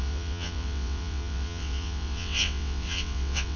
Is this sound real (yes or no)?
no